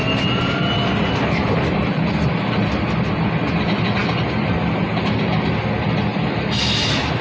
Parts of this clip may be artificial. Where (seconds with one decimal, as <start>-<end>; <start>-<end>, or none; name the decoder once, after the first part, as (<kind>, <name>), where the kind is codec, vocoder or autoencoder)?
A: 4.0-4.5 (vocoder, BigVGAN v2); 6.1-7.2